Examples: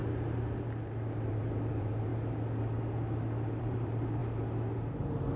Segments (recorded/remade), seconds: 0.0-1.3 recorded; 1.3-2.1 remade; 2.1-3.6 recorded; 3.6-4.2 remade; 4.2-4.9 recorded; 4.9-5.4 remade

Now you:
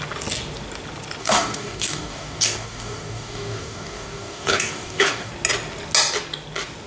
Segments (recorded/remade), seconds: 0.0-1.2 recorded; 1.2-5.3 remade; 5.3-6.9 recorded

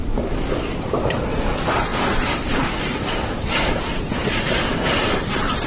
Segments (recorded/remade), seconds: 0.0-0.7 recorded; 0.7-5.7 remade

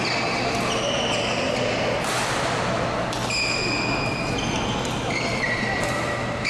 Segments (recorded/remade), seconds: 0.0-6.5 recorded

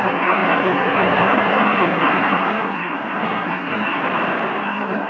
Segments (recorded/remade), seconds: 0.0-4.0 remade; 4.0-4.6 recorded; 4.6-5.1 remade